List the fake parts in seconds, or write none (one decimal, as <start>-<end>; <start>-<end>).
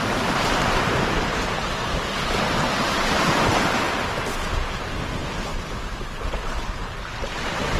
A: 0.0-3.8